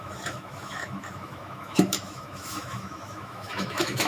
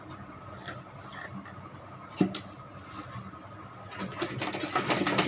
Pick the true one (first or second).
second